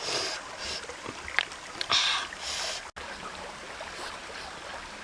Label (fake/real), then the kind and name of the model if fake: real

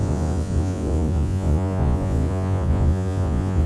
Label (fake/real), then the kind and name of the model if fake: fake, vocoder, Vocos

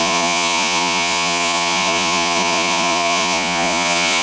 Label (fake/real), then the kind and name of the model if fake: fake, vocoder, Vocos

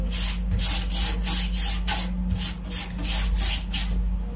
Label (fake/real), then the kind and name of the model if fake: real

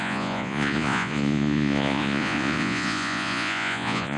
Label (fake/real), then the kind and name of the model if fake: fake, vocoder, Vocos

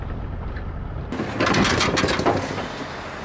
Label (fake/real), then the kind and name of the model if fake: real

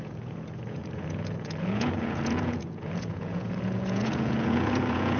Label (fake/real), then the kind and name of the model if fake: fake, vocoder, Vocos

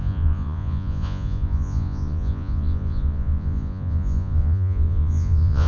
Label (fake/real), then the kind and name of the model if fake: fake, vocoder, Vocos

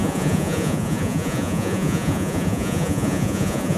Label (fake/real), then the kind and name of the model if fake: fake, vocoder, Vocos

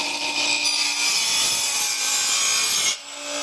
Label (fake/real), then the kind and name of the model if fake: real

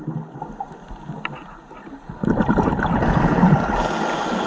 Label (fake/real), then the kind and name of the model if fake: real